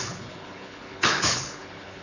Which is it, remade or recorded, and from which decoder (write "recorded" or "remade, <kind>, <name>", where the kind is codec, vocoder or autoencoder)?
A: remade, codec, HILCodec